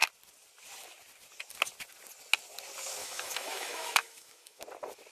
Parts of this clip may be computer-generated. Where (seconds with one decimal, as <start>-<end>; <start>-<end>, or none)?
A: 3.0-4.6